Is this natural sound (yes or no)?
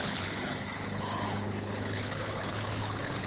no